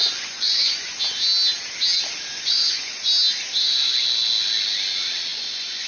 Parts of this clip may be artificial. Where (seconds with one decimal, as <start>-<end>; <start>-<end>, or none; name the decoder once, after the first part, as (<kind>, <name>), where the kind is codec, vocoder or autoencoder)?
0.0-1.0 (vocoder, Vocos); 2.3-3.1; 5.3-5.9